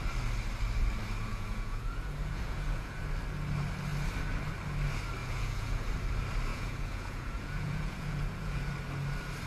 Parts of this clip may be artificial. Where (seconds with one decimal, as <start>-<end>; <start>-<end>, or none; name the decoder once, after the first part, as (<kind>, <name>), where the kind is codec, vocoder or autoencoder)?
1.3-3.0 (vocoder, Vocos); 5.2-5.9; 6.5-8.7